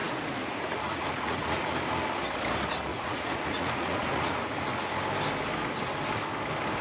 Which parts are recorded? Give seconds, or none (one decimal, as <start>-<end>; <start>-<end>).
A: 1.7-2.9; 4.7-6.8